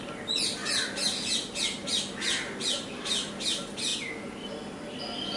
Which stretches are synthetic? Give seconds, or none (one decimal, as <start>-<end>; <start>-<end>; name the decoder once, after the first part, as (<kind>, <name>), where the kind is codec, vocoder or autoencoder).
none